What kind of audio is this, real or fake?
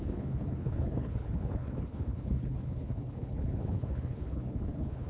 fake